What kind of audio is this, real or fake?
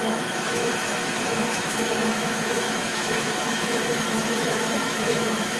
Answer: fake